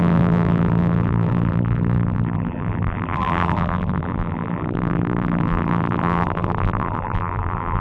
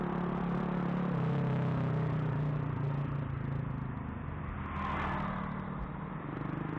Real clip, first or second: second